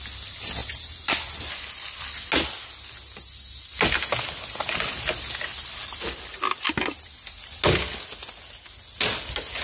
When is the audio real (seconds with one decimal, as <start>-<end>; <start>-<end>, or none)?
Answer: 0.0-9.6